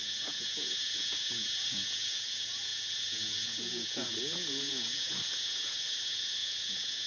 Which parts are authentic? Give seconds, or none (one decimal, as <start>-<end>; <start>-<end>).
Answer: none